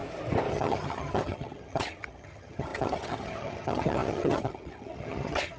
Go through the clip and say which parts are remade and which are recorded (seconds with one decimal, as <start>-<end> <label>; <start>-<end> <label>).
0.0-0.5 recorded; 0.5-5.6 remade